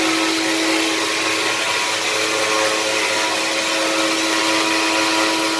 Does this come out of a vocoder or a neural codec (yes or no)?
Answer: no